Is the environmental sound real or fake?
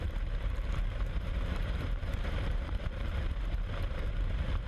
fake